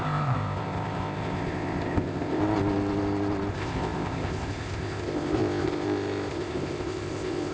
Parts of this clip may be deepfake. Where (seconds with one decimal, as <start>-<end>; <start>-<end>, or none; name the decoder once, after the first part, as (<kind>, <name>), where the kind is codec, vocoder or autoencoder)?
0.0-2.4 (codec, ZipCodec); 3.5-7.5